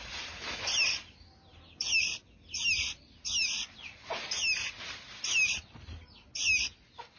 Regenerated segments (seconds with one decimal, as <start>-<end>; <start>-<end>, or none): none